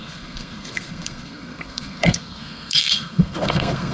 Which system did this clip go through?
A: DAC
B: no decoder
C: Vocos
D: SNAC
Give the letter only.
D